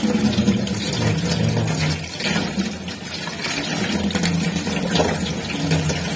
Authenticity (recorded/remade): recorded